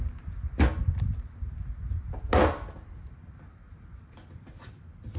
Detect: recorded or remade recorded